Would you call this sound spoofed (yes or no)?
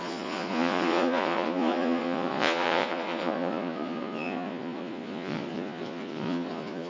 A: yes